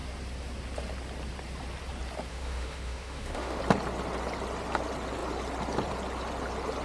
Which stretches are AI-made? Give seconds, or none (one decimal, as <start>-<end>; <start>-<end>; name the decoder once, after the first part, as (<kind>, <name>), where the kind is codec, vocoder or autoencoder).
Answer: 2.3-3.6 (autoencoder, DAC-VAE)